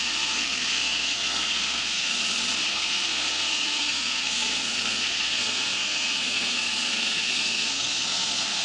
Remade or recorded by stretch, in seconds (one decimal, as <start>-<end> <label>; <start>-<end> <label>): 0.0-2.2 remade; 2.2-2.7 recorded; 2.7-8.6 remade

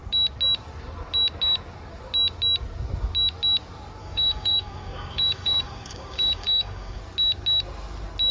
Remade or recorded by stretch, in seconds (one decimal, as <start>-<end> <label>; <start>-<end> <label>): 0.0-4.0 recorded; 4.0-7.0 remade; 7.0-8.3 recorded